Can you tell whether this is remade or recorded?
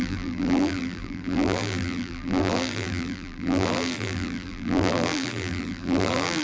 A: remade